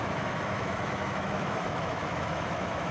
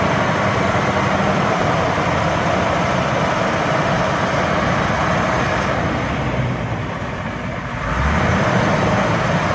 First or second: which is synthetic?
first